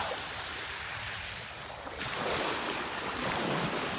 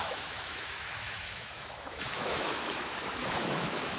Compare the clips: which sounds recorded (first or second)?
first